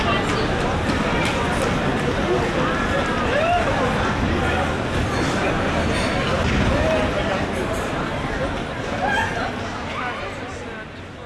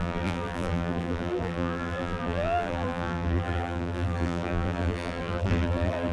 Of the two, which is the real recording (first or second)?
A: first